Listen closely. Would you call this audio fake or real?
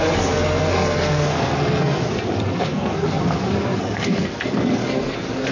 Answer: fake